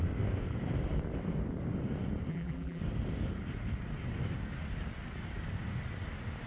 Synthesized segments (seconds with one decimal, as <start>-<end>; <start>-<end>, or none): 2.3-2.8